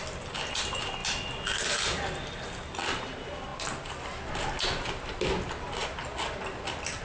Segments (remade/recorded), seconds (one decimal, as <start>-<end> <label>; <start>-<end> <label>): 0.0-7.0 recorded